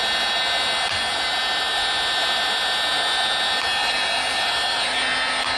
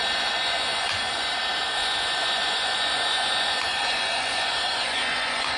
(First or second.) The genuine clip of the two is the first